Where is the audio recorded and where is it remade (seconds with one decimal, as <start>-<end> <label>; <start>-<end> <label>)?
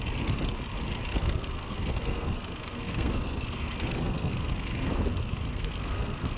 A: 0.0-1.1 recorded; 1.1-4.9 remade; 4.9-5.4 recorded; 5.4-6.4 remade